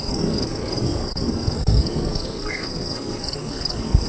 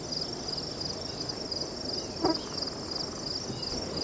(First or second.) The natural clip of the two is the second